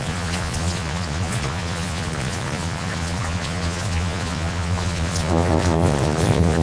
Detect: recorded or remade remade